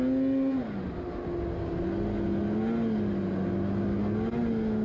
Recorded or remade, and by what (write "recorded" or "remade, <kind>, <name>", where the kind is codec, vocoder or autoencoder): recorded